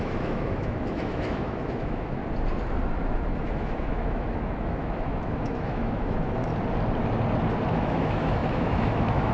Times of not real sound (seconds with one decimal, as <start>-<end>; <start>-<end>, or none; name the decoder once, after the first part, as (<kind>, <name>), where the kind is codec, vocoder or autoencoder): 0.0-2.2 (autoencoder, DAC-VAE); 3.0-6.5; 7.7-9.3

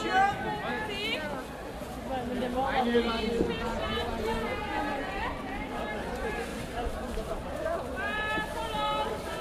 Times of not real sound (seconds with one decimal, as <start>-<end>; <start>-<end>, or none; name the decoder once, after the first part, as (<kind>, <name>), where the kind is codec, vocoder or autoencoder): 2.4-4.1 (vocoder, BigVGAN v2); 6.5-9.4

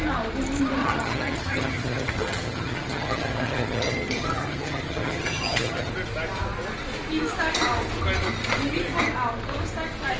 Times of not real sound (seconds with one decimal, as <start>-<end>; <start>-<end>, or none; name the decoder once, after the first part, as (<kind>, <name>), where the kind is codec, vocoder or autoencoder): 0.8-5.9 (vocoder, HiFi-GAN)